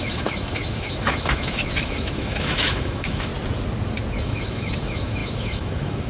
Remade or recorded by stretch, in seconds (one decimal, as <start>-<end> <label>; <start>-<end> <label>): 0.0-3.3 remade; 3.3-4.2 recorded; 4.2-6.1 remade